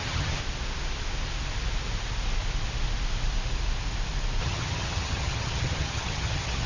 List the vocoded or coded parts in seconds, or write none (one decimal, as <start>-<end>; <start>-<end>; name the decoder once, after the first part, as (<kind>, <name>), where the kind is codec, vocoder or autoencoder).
0.0-0.4 (vocoder, HiFi-GAN); 4.4-6.7